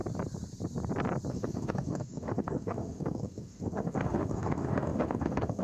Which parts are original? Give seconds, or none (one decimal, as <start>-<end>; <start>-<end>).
0.0-1.3